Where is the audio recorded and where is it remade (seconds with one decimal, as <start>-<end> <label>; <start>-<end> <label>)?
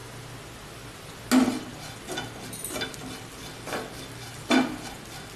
0.0-5.4 recorded